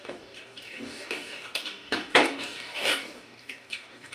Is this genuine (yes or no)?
no